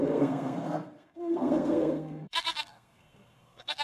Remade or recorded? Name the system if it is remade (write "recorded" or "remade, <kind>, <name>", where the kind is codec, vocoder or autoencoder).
remade, codec, SNAC